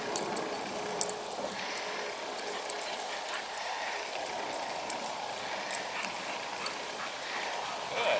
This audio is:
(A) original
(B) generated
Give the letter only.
A